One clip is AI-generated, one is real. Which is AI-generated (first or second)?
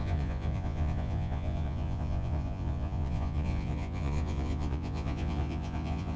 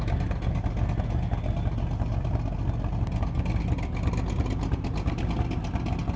first